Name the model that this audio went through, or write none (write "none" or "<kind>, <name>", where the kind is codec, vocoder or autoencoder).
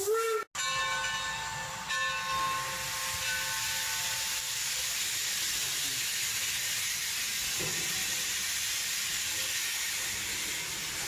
none